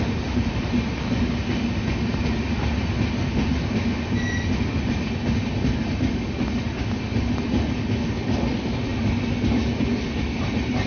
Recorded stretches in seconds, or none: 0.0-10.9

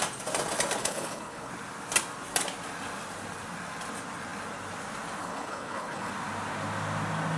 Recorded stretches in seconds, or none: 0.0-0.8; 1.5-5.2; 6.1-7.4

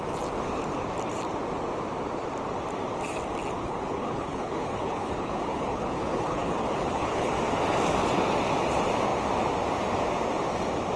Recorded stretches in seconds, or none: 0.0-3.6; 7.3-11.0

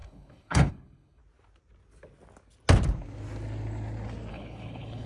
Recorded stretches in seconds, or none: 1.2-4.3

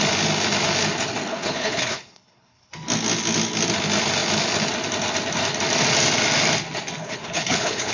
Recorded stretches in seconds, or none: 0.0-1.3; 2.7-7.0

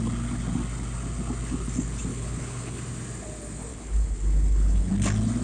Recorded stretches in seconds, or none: 0.0-2.1; 2.8-3.7; 4.9-5.4

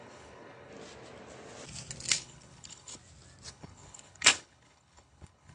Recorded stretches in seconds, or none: 0.7-2.1; 3.0-3.5